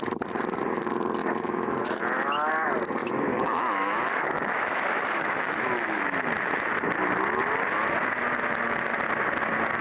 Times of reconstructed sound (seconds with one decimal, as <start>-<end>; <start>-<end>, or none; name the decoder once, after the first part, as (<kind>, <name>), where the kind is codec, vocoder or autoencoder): 1.2-2.5 (autoencoder, DAC-VAE); 3.0-6.0